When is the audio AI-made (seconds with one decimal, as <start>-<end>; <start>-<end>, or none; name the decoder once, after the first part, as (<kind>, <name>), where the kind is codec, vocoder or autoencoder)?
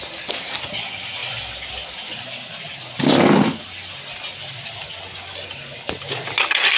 none